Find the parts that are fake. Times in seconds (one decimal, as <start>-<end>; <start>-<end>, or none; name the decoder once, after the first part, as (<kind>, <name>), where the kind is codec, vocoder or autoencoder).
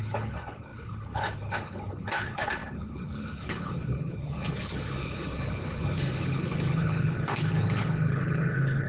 0.0-8.9 (codec, HILCodec)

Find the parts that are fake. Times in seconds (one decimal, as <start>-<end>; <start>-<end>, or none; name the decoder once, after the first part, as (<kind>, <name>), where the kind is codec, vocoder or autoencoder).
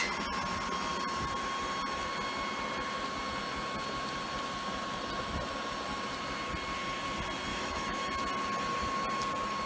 7.5-8.1 (autoencoder, DAC-VAE)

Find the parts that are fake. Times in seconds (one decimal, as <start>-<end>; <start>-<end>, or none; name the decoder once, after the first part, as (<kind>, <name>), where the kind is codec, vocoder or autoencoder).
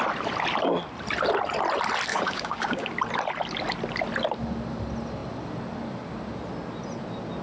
2.1-2.9 (codec, DAC)